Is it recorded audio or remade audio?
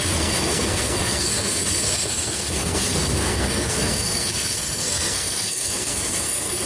remade